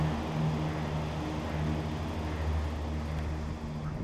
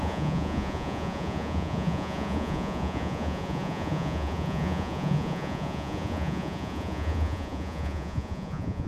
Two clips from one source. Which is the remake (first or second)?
second